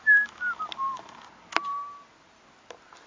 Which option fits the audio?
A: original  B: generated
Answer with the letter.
A